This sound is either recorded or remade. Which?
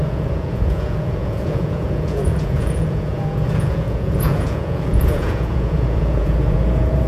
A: remade